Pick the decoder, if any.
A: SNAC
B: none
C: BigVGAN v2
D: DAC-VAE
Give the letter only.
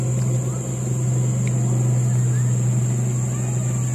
B